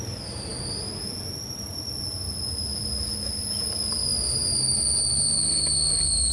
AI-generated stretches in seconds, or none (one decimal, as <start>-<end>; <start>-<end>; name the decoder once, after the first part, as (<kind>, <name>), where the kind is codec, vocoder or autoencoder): none